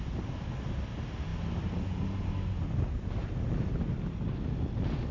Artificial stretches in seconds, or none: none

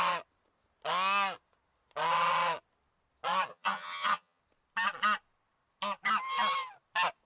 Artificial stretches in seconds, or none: 3.5-4.4 (vocoder, HiFi-GAN)

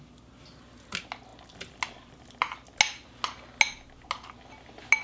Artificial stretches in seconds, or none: none

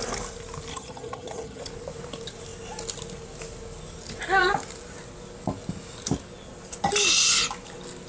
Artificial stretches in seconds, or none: 0.7-1.6 (vocoder, HiFi-GAN)

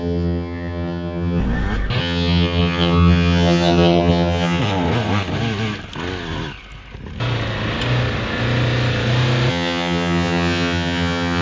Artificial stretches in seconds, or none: 0.0-1.4 (vocoder, HiFi-GAN); 2.0-4.6; 9.5-11.4

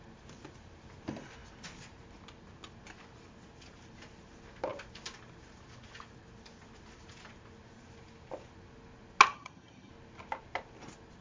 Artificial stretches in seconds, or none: 9.3-9.9 (vocoder, HiFi-GAN)